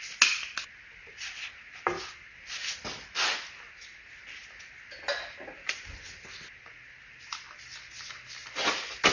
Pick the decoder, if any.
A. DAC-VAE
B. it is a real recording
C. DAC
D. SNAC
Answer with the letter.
B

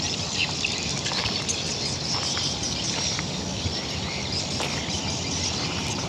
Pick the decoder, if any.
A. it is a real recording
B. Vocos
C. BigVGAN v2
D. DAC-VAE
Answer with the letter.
A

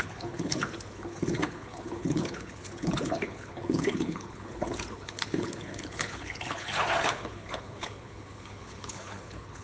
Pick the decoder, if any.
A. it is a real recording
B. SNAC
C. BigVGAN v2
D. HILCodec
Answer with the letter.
D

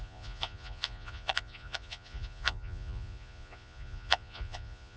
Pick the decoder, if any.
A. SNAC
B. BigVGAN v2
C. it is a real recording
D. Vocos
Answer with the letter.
D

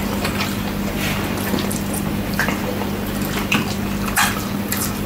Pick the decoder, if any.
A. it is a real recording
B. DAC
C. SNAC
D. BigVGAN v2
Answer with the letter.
D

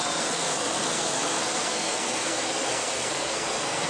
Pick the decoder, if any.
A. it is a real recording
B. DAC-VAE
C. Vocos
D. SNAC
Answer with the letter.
D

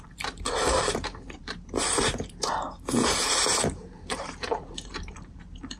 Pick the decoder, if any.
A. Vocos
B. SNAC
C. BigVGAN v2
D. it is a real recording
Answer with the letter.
C